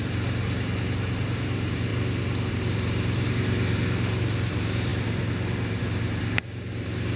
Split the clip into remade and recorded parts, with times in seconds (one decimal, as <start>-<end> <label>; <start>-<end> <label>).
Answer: 0.0-1.9 remade; 1.9-2.5 recorded; 2.5-7.2 remade